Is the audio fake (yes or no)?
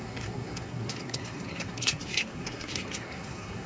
yes